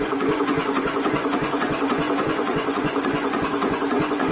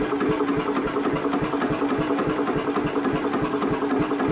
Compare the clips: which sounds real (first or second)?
second